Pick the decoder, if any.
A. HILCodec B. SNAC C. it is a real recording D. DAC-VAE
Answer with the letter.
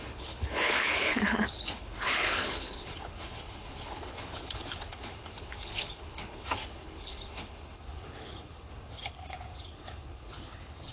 A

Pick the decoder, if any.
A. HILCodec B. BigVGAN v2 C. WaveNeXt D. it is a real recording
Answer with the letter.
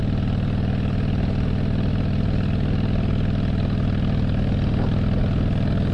D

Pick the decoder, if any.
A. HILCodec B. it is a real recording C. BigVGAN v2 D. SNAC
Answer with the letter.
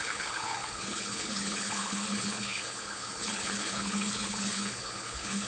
A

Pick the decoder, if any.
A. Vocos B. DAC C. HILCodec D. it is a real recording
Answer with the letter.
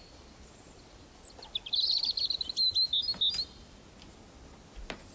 D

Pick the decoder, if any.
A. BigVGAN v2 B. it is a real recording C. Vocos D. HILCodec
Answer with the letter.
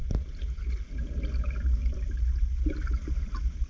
B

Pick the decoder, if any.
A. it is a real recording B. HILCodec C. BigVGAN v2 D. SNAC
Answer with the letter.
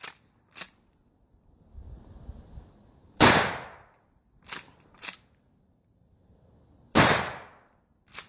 A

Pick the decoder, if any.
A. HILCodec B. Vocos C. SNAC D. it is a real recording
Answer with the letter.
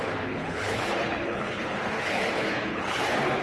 A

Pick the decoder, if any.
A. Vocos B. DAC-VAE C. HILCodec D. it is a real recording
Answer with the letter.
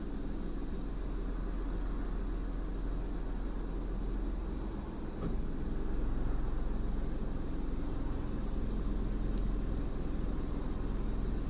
D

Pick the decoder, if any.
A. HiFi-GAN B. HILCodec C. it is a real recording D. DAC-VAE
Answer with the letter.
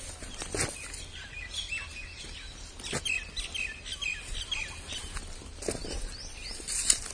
C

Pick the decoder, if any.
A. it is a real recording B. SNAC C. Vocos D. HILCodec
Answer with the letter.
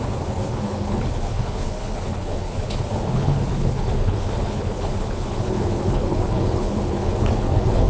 D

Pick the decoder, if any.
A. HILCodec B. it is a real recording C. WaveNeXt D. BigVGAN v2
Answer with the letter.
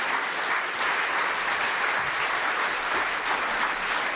B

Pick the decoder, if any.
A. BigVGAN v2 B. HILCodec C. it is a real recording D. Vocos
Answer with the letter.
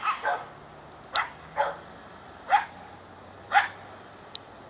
C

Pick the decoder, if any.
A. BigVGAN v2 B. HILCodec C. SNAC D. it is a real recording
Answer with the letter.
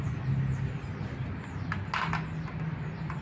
D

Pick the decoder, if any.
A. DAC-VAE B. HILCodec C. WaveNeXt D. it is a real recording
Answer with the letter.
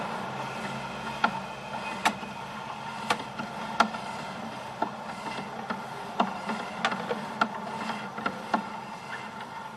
D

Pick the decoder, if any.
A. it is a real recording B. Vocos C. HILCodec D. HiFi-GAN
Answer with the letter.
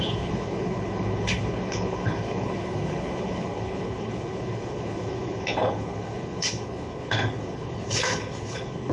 C